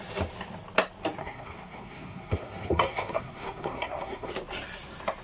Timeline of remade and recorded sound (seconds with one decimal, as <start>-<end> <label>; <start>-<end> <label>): 0.0-1.2 recorded; 1.2-4.3 remade; 4.3-5.2 recorded